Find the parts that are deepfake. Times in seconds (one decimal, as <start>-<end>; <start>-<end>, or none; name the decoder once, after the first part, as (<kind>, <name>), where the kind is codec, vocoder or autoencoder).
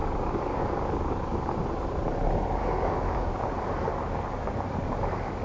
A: 0.0-1.6 (codec, DAC); 2.6-3.4; 3.9-4.5